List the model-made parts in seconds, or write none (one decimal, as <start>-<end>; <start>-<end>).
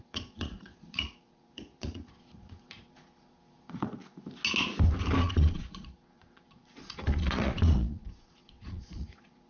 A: 0.0-4.0; 5.2-9.5